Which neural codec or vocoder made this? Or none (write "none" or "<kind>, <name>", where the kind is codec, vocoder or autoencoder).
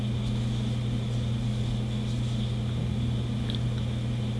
none